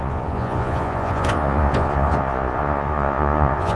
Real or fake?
fake